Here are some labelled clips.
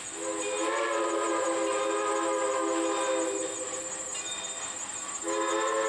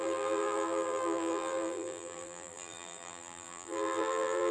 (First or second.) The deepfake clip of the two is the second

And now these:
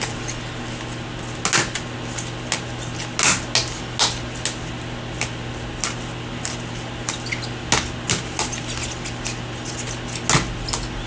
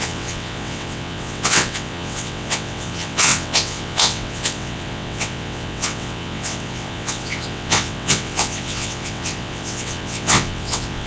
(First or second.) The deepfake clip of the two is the second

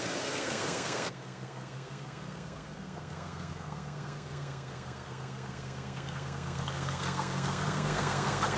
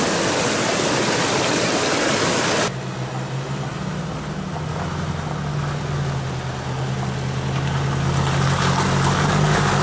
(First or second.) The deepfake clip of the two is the first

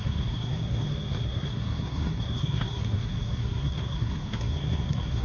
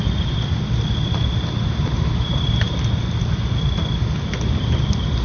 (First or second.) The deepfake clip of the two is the first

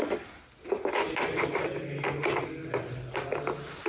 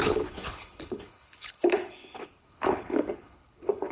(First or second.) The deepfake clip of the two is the second